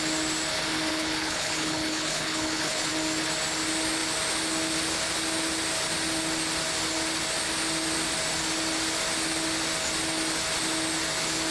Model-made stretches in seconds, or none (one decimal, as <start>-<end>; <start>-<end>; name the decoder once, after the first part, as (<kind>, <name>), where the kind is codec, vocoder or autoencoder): 0.9-2.9 (codec, HILCodec)